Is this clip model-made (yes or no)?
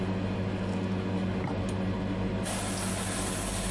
no